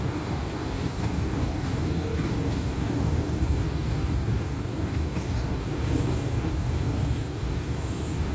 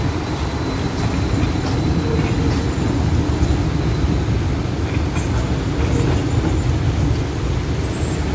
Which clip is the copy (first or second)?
first